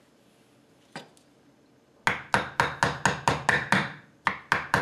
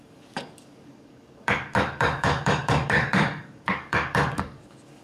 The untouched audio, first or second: first